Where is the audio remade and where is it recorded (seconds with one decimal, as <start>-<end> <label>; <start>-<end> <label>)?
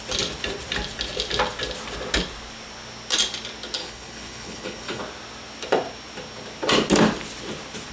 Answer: 0.0-3.8 recorded; 3.8-5.0 remade; 5.0-7.9 recorded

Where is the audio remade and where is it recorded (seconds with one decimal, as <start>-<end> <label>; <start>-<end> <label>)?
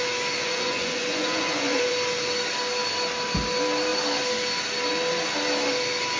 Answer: 0.0-0.4 recorded; 0.4-1.9 remade; 1.9-6.2 recorded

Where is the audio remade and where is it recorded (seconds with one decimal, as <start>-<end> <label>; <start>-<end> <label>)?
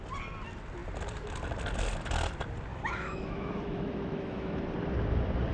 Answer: 0.0-2.7 recorded; 2.7-4.6 remade; 4.6-5.5 recorded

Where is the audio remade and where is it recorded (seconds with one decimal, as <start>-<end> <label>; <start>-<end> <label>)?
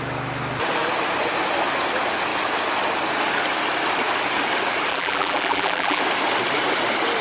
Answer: 0.0-4.9 recorded; 4.9-6.0 remade; 6.0-7.2 recorded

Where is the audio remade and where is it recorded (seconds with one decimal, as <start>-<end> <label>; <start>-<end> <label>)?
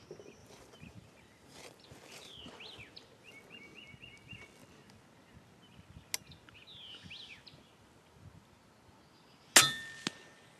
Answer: 0.0-0.4 recorded; 0.4-2.4 remade; 2.4-10.6 recorded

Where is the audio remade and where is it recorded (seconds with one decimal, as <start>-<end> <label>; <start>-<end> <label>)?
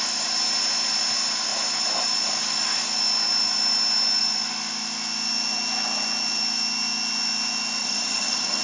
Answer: 0.0-7.8 recorded; 7.8-8.6 remade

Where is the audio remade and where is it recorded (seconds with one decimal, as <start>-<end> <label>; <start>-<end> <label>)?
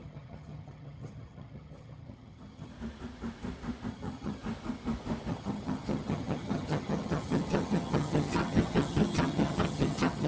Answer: 0.0-2.7 remade; 2.7-3.9 recorded; 3.9-4.4 remade; 4.4-5.3 recorded; 5.3-10.3 remade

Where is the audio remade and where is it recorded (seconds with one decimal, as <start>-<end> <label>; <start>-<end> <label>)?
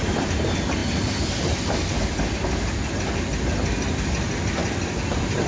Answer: 0.0-5.5 recorded